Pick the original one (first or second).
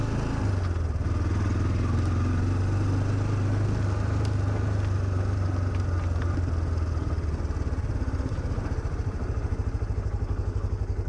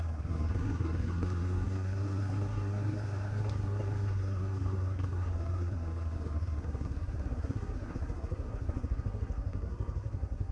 first